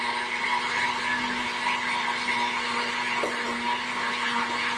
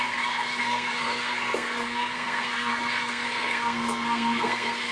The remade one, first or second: second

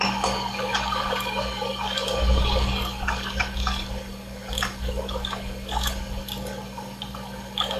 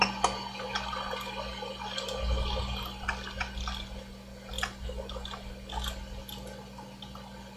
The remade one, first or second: first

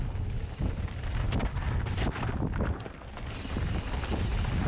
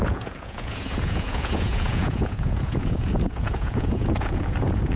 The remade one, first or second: second